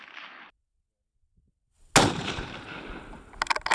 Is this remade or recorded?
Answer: recorded